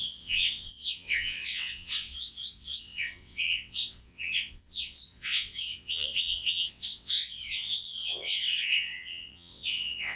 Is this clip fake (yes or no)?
yes